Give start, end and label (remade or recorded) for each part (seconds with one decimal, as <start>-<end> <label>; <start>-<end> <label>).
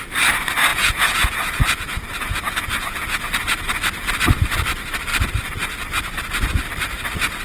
0.0-0.7 recorded; 0.7-3.6 remade; 3.6-7.4 recorded